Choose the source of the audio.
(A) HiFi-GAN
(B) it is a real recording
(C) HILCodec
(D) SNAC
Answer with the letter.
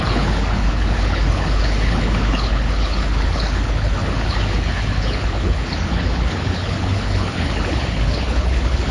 C